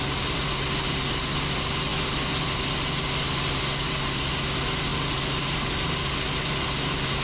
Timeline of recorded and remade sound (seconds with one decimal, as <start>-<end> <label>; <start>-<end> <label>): 0.0-7.2 recorded